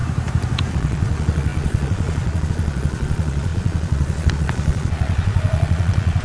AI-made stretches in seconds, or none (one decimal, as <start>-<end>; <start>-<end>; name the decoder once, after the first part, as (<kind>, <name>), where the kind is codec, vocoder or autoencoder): 0.7-6.2 (vocoder, Vocos)